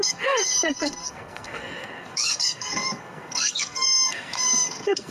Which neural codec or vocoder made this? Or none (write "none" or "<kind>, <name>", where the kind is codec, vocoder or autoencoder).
codec, SNAC